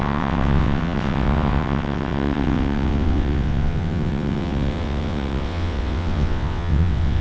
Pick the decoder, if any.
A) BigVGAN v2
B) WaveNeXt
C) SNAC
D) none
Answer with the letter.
B